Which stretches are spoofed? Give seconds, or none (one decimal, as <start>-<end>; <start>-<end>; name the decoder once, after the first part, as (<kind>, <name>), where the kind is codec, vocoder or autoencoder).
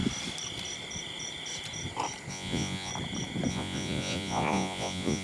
2.3-2.9 (vocoder, Vocos); 3.5-5.2